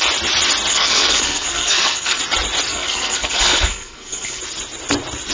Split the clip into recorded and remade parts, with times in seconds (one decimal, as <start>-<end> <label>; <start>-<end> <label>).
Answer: 0.0-0.7 recorded; 0.7-2.2 remade; 2.2-2.7 recorded; 2.7-4.4 remade; 4.4-5.3 recorded